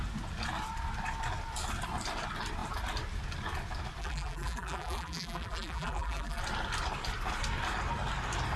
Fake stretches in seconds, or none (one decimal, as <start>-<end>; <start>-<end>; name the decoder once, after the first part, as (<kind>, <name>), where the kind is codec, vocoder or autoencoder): 4.0-6.4 (vocoder, BigVGAN v2)